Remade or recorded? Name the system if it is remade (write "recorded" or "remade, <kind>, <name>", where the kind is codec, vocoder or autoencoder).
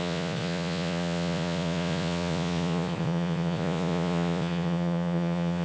remade, vocoder, Vocos